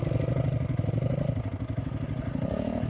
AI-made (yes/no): no